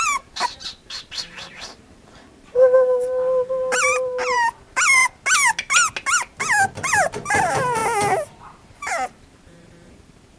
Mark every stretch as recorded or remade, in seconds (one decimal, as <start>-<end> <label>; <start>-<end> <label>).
0.0-5.0 remade; 5.0-6.7 recorded; 6.7-7.8 remade; 7.8-8.4 recorded; 8.4-10.4 remade